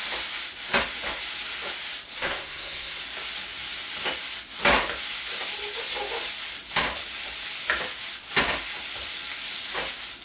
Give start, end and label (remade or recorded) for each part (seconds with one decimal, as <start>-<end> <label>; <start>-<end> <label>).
0.0-2.2 recorded; 2.2-3.0 remade; 3.0-10.2 recorded